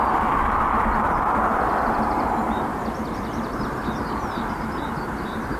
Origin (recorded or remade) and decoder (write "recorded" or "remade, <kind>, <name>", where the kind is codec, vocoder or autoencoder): recorded